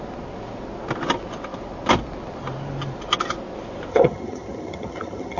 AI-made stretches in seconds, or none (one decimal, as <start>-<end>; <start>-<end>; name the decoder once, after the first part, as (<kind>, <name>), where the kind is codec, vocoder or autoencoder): 3.9-5.4 (vocoder, HiFi-GAN)